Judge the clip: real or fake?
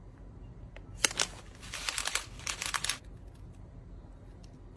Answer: real